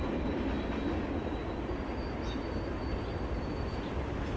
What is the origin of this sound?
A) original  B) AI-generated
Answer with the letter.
A